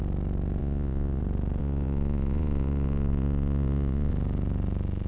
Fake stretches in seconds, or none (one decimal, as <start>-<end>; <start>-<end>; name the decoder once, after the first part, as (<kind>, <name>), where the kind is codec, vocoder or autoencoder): 0.6-1.2 (vocoder, Vocos); 1.6-4.1